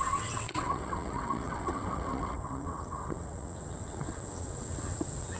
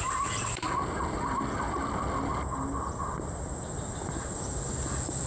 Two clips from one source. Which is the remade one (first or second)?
first